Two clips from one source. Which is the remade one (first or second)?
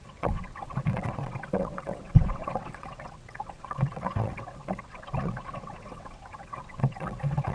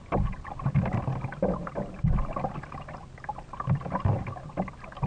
first